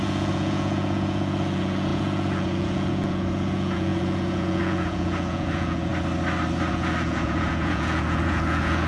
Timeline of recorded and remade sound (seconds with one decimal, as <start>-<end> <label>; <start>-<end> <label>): 0.0-5.9 remade; 5.9-6.7 recorded; 6.7-8.9 remade